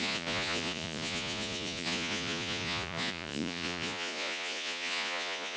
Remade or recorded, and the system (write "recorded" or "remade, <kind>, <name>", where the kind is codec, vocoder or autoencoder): remade, vocoder, Vocos